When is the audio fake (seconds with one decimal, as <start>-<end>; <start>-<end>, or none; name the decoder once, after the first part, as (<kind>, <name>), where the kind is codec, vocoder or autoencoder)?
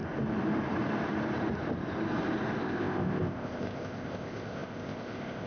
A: 2.6-5.5 (codec, ZipCodec)